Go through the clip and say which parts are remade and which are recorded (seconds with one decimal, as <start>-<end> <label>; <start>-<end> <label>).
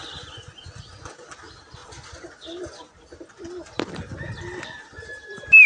0.0-5.7 recorded